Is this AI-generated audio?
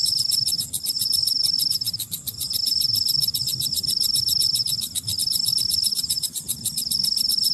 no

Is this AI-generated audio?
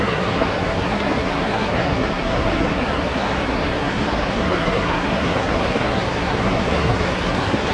yes